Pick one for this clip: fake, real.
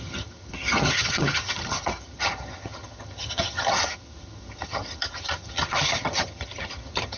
fake